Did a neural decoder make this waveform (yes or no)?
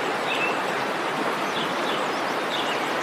yes